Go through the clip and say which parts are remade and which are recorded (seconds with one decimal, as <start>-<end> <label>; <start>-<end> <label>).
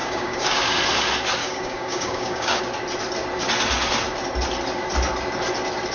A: 0.0-0.8 remade; 0.8-1.4 recorded; 1.4-2.6 remade; 2.6-5.9 recorded